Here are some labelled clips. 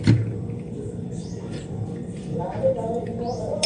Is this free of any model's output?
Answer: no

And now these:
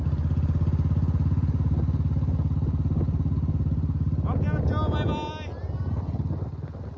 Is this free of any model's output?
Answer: yes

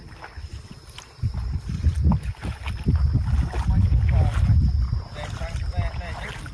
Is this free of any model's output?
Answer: yes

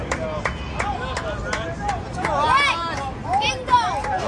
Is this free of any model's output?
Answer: yes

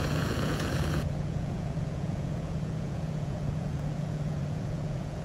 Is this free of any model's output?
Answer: no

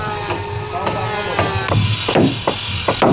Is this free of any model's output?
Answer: yes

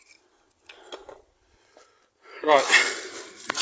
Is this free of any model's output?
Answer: yes